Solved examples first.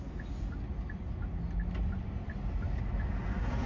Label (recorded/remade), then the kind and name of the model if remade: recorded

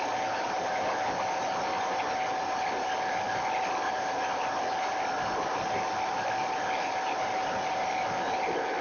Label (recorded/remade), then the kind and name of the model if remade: recorded